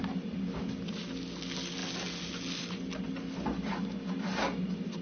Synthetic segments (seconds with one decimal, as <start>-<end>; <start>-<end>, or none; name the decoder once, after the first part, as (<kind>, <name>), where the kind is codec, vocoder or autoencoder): none